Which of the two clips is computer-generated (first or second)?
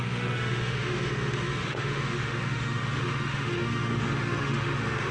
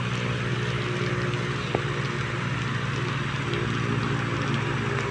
first